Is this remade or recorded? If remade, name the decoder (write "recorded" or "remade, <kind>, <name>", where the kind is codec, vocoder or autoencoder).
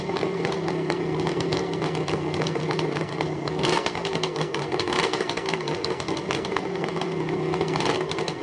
remade, codec, SNAC